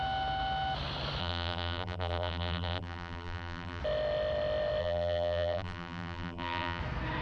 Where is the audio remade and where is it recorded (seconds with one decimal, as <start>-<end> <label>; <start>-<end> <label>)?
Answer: 0.0-1.2 recorded; 1.2-3.8 remade; 3.8-4.8 recorded; 4.8-6.8 remade; 6.8-7.2 recorded